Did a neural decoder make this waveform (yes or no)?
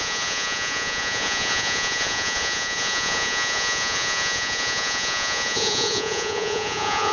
yes